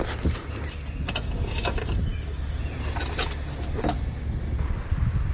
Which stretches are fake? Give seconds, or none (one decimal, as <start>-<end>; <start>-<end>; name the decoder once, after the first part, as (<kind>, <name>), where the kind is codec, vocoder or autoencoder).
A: none